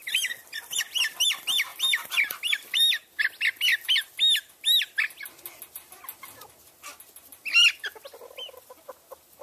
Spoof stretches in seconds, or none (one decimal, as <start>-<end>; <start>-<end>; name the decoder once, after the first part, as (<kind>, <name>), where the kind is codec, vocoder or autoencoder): none